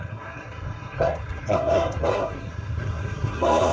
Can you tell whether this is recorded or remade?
remade